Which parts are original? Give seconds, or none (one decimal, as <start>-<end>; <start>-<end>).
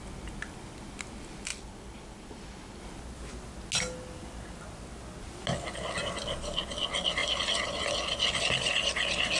0.0-1.5; 2.8-7.2; 7.8-9.4